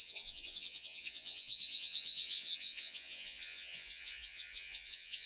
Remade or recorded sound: remade